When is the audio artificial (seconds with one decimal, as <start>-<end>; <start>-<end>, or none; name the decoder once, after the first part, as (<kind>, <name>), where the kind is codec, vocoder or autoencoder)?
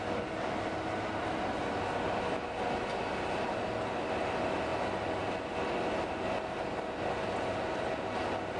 none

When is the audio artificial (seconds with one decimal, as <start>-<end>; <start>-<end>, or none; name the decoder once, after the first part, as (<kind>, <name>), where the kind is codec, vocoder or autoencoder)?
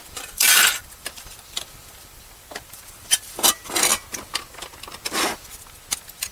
0.0-3.9 (vocoder, BigVGAN v2)